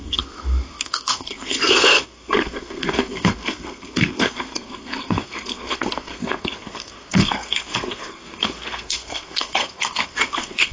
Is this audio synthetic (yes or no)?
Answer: yes